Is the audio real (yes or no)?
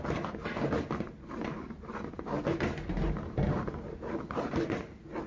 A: yes